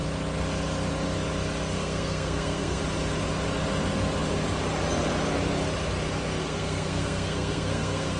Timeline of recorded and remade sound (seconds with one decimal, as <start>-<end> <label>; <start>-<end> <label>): 0.0-1.8 recorded; 1.8-2.8 remade; 2.8-6.4 recorded; 6.4-8.2 remade